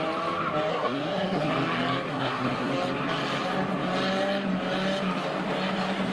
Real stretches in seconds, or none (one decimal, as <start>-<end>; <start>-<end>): 0.0-0.7; 1.5-2.1; 2.7-6.1